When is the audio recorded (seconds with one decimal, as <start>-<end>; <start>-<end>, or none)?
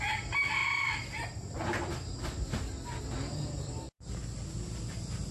0.0-5.3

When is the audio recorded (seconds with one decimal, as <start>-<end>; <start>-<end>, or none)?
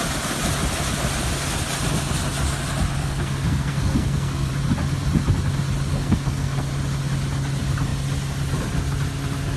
0.0-3.0; 4.5-5.9; 6.7-9.6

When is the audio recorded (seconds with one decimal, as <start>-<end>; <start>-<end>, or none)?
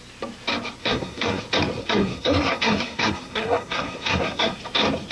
0.0-0.8; 1.4-1.8; 4.6-5.1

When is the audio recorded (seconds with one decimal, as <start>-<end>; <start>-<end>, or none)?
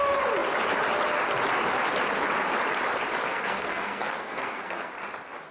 0.0-3.3; 4.9-5.5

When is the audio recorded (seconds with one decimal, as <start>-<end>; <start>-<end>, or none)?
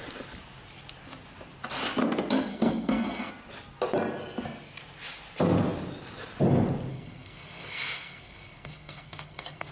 0.0-2.5; 3.3-6.9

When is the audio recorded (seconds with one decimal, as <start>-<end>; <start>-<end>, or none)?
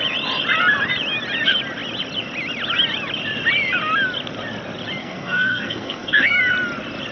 0.0-5.0; 6.4-7.1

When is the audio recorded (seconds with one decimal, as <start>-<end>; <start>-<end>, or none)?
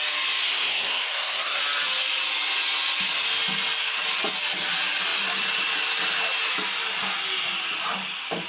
0.0-0.4; 1.6-8.5